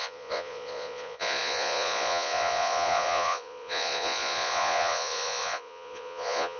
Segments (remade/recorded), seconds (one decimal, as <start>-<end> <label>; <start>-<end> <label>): 0.0-6.6 remade